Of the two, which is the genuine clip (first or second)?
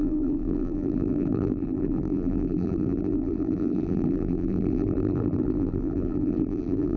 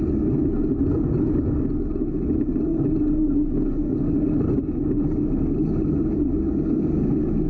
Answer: second